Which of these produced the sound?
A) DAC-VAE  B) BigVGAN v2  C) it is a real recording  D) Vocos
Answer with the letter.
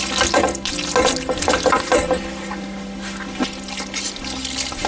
C